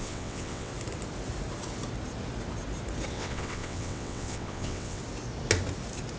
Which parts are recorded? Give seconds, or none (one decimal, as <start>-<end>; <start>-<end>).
0.7-3.1; 5.0-6.2